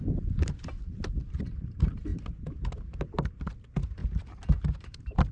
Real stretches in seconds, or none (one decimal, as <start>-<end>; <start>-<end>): 0.0-4.0